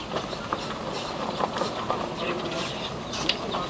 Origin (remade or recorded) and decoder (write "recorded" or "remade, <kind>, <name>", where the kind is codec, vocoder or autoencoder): recorded